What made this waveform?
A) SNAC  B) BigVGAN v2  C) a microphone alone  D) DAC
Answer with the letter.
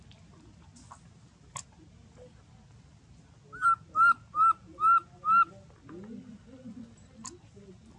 C